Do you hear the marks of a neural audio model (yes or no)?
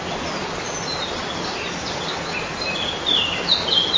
no